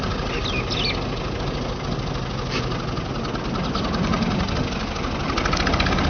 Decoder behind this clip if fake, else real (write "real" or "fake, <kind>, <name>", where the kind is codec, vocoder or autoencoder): real